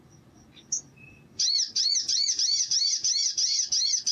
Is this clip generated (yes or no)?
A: no